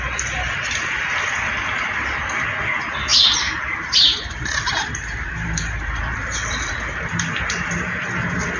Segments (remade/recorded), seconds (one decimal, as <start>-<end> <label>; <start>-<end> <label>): 0.0-3.1 recorded; 3.1-7.3 remade; 7.3-8.6 recorded